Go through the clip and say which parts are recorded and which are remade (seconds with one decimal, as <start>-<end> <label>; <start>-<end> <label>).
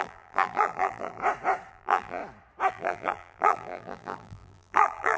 0.0-1.2 remade; 1.2-1.7 recorded; 1.7-2.2 remade; 2.2-2.7 recorded; 2.7-5.2 remade